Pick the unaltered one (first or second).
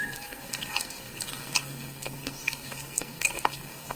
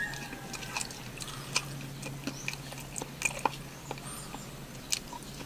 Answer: second